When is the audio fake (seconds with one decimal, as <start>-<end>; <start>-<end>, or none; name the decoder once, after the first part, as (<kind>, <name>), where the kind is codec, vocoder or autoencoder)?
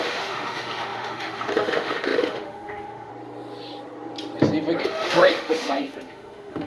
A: 0.0-3.1 (autoencoder, DAC-VAE); 4.8-6.7